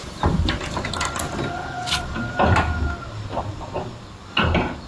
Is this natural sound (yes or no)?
yes